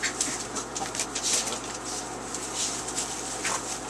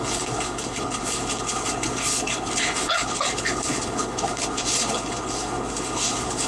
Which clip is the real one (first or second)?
first